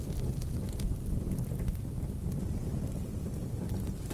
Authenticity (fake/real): real